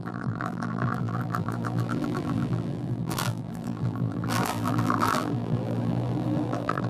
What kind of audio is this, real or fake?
fake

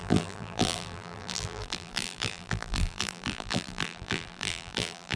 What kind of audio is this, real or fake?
fake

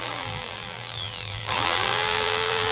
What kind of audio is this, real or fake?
fake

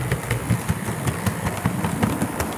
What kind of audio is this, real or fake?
fake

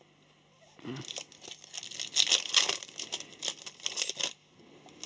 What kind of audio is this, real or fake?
real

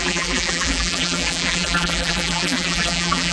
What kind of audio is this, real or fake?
fake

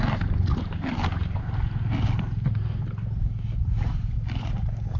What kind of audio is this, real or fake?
real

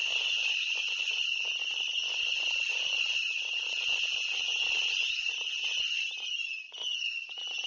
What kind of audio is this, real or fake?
fake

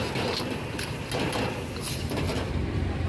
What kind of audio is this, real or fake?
real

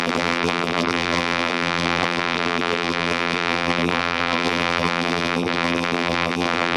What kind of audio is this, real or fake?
fake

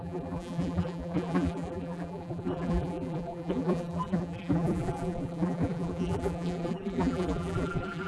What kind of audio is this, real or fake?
fake